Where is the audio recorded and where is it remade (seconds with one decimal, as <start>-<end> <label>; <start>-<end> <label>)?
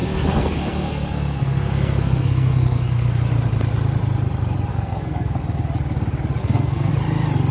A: 0.0-3.2 remade; 3.2-4.7 recorded; 4.7-5.4 remade; 5.4-6.4 recorded; 6.4-6.9 remade; 6.9-7.5 recorded